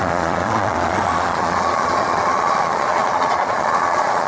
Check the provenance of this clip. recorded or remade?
remade